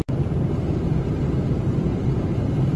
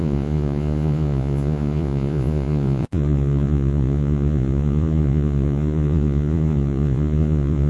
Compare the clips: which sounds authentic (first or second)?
first